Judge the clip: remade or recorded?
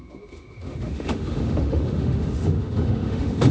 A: remade